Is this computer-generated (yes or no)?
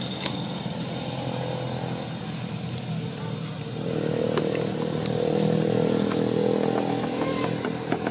no